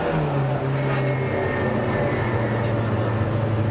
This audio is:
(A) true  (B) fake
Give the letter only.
A